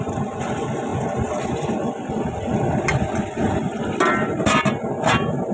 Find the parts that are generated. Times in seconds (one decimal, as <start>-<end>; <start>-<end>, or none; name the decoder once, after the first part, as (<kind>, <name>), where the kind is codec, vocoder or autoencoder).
none